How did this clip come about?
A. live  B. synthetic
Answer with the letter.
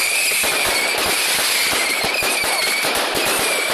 B